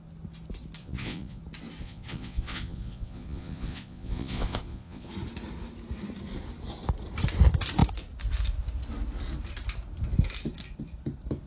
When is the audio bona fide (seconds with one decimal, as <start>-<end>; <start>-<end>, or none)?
0.0-0.8; 1.4-1.8; 5.1-11.5